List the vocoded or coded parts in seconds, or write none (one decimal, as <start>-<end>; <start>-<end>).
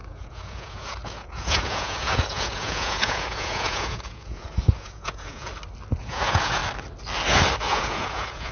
0.0-5.5; 6.0-6.6; 7.7-8.5